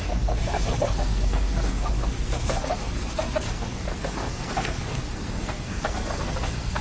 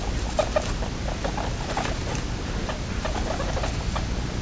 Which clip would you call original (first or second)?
second